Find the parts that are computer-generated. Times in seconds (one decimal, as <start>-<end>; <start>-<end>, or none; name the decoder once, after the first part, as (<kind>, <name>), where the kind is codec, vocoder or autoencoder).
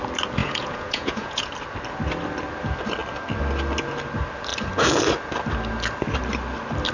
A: 0.4-1.5 (vocoder, Vocos)